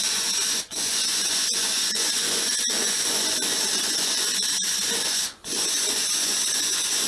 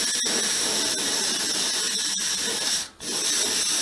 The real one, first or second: second